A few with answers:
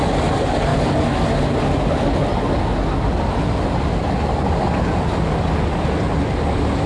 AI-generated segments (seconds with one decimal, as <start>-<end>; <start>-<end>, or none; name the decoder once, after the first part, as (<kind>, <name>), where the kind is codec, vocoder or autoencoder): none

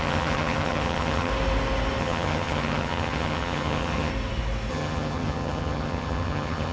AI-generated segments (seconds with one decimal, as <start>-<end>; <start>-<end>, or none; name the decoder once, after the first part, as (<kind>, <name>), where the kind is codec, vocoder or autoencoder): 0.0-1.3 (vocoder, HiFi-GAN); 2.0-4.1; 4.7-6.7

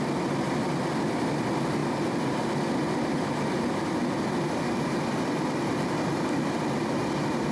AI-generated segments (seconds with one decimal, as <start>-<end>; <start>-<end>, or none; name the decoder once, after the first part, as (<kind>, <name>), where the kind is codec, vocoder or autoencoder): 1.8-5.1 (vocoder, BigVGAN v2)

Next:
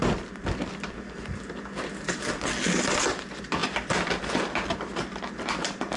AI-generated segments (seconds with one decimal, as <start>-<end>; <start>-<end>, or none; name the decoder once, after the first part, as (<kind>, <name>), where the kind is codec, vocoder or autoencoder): 0.0-2.2 (vocoder, BigVGAN v2)